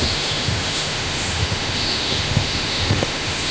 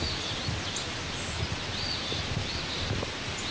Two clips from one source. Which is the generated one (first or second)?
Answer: first